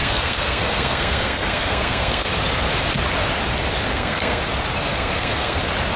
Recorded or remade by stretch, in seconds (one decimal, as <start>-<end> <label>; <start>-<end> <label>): 0.0-2.4 remade; 2.4-3.9 recorded; 3.9-4.4 remade; 4.4-4.9 recorded; 4.9-5.6 remade; 5.6-6.0 recorded